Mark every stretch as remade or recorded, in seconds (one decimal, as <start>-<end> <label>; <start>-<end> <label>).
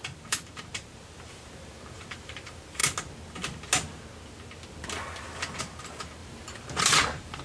0.0-2.8 remade; 2.8-5.6 recorded; 5.6-6.2 remade; 6.2-6.8 recorded; 6.8-7.4 remade